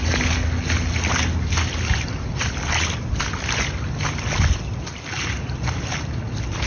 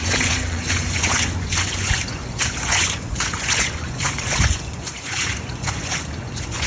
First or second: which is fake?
second